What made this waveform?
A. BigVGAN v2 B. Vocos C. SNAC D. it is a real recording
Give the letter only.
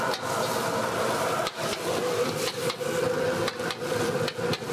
D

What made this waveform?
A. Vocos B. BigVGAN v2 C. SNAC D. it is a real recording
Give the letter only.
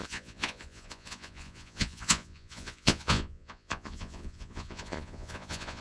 A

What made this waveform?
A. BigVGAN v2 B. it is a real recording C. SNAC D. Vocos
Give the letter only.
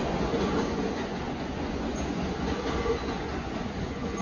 D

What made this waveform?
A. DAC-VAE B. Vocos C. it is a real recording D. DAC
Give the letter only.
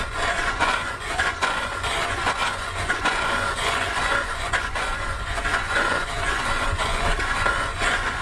B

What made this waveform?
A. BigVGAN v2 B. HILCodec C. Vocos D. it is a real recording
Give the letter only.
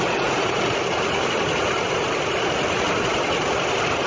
D